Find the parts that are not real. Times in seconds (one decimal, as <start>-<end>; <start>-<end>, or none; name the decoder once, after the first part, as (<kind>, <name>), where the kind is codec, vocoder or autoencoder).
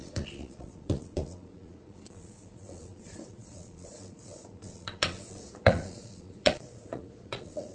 0.0-7.7 (vocoder, Vocos)